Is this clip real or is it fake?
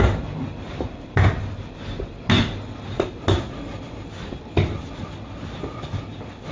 real